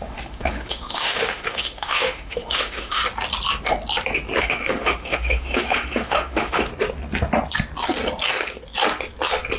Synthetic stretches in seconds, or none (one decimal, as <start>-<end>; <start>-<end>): 0.0-3.0; 4.4-6.7